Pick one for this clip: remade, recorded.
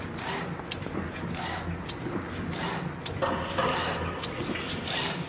recorded